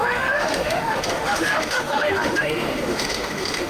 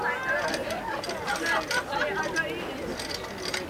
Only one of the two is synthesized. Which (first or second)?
first